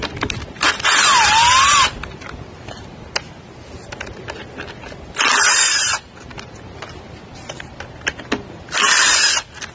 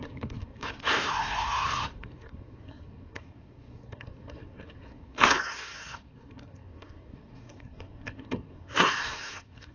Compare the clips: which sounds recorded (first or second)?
first